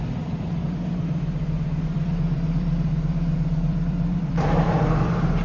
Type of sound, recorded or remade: remade